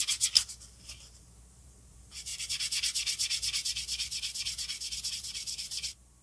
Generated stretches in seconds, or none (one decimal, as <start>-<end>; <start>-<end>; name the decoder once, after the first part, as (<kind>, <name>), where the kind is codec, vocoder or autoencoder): 0.0-2.3 (vocoder, BigVGAN v2); 5.1-6.2